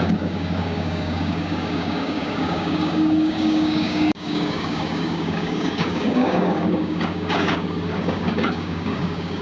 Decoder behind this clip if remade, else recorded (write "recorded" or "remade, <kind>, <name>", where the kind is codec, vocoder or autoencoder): remade, codec, DAC